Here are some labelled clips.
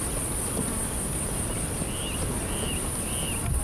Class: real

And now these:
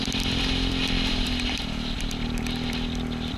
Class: fake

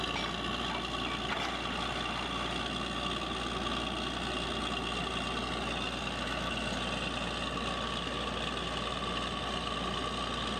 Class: real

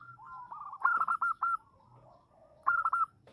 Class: real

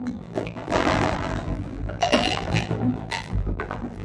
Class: fake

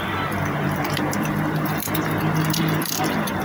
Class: fake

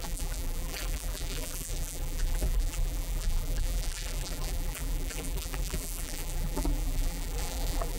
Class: fake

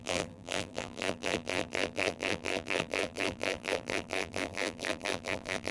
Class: fake